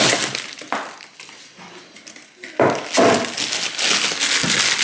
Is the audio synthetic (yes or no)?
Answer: no